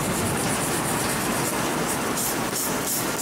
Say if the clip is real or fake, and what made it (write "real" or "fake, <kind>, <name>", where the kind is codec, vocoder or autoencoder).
real